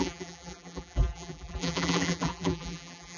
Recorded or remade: remade